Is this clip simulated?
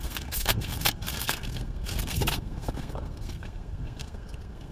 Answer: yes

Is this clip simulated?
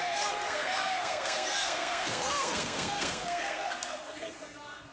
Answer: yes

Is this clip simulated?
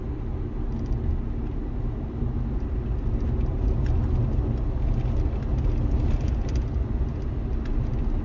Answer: no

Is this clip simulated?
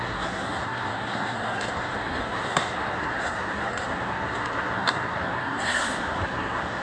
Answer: yes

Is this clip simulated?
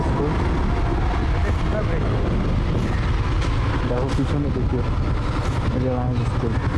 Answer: no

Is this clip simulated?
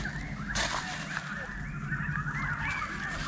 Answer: no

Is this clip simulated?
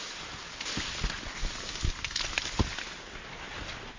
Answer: no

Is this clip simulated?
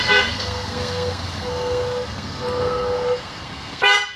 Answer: yes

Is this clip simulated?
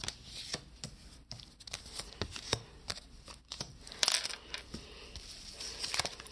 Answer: no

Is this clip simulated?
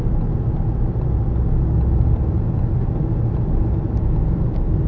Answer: no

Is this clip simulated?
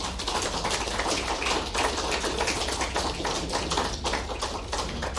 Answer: no